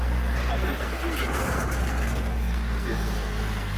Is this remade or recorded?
remade